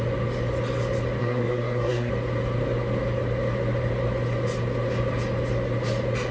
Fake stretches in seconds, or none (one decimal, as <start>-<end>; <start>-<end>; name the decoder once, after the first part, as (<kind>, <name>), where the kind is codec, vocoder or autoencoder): 1.2-2.1 (codec, SNAC)